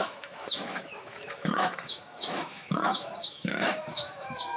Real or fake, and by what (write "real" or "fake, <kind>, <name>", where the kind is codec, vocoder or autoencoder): fake, autoencoder, DAC-VAE